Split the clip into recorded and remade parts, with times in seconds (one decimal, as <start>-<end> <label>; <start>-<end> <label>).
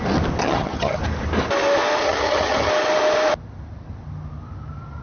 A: 0.0-0.4 recorded; 0.4-1.0 remade; 1.0-2.0 recorded; 2.0-2.7 remade; 2.7-5.0 recorded